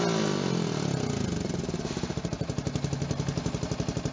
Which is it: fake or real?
real